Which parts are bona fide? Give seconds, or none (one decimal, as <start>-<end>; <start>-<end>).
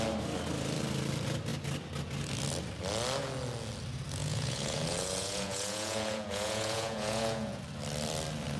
0.0-4.2; 7.6-8.6